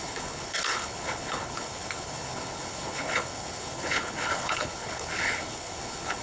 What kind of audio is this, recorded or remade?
remade